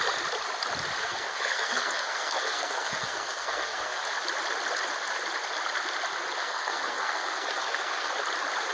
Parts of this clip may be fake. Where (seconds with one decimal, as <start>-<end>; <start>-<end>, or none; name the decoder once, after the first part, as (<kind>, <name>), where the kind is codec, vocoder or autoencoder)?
1.0-4.0 (codec, SNAC); 6.4-8.1